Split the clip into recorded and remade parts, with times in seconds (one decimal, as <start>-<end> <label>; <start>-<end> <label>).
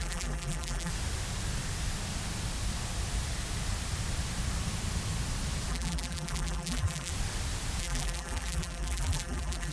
0.0-0.9 remade; 0.9-5.7 recorded; 5.7-7.1 remade; 7.1-7.8 recorded; 7.8-9.7 remade